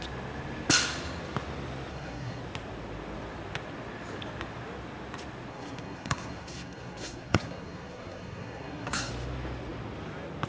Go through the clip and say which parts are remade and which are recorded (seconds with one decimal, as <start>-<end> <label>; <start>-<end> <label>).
0.0-1.9 recorded; 1.9-2.4 remade; 2.4-5.5 recorded; 5.5-9.1 remade; 9.1-10.5 recorded